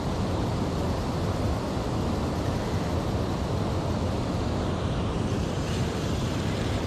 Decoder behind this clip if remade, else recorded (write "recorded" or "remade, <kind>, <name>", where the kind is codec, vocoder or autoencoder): remade, vocoder, BigVGAN v2